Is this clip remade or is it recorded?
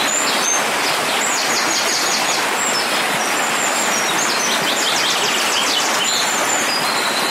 recorded